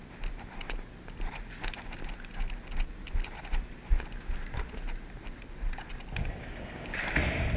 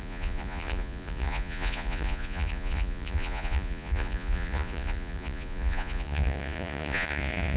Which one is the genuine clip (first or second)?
first